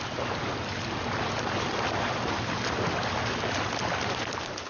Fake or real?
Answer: real